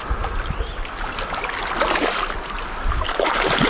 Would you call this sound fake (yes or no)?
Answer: no